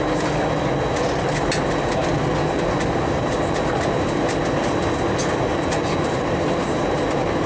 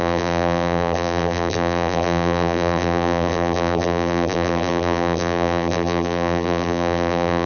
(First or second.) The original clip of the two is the first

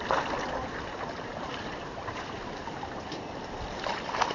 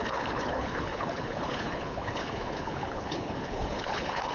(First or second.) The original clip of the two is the first